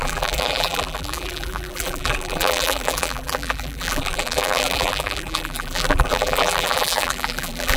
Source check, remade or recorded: remade